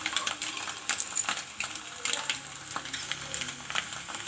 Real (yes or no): yes